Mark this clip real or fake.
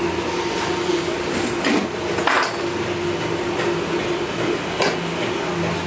real